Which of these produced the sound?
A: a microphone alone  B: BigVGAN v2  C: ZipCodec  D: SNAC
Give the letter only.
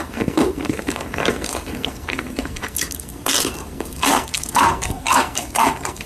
D